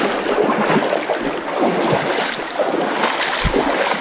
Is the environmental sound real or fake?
real